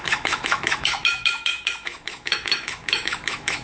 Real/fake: fake